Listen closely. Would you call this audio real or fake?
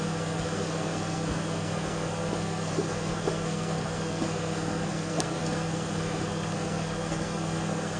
fake